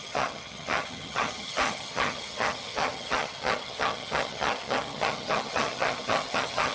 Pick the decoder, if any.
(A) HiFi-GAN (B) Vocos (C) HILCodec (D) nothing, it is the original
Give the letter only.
A